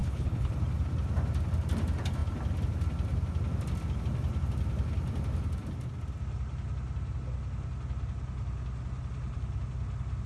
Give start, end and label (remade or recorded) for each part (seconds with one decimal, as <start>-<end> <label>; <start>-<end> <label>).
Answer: 0.0-0.5 remade; 0.5-10.3 recorded